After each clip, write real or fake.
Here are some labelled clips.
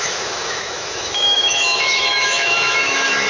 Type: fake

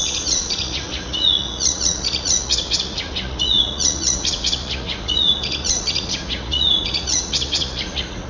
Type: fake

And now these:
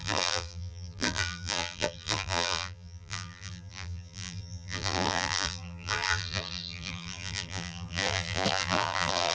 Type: fake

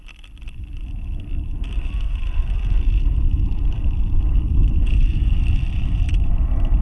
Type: real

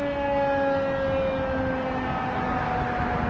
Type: real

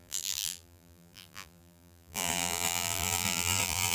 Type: fake